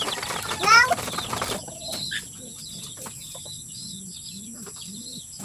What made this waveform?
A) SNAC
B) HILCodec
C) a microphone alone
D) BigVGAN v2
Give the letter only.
C